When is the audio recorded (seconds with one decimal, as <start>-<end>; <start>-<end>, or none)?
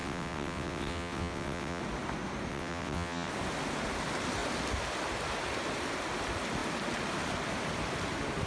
1.8-2.5; 3.3-8.5